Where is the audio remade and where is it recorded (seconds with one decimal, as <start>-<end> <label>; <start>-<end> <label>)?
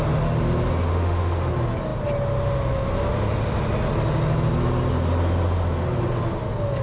0.0-0.9 recorded; 0.9-1.5 remade; 1.5-6.8 recorded